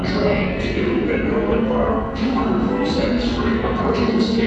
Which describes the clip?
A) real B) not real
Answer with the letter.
B